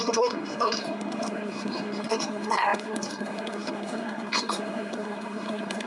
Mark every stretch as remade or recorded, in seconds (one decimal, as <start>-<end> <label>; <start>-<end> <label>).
0.0-5.9 remade